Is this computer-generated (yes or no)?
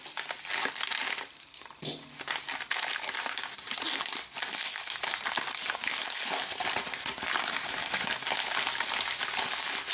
no